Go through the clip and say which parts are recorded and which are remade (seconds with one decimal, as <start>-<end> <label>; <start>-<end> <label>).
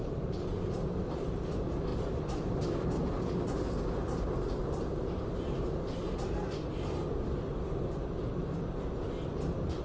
0.0-9.8 recorded